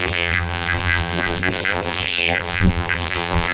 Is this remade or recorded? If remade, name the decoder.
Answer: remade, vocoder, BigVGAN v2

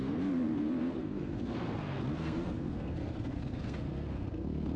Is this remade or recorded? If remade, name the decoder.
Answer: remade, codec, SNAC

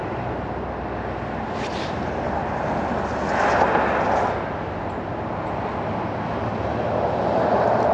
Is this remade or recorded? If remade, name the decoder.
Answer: recorded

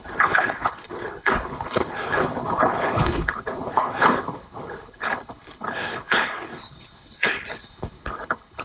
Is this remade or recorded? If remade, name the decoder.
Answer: remade, codec, HILCodec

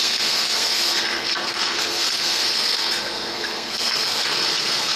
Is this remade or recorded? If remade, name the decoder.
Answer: remade, codec, SNAC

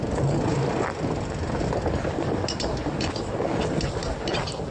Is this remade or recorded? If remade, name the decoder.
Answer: recorded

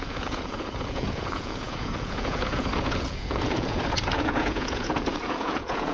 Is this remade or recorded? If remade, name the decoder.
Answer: remade, vocoder, Vocos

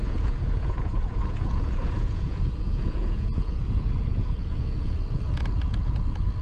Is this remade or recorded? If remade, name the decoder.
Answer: remade, vocoder, Vocos